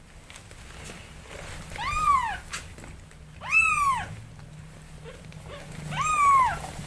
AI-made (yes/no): no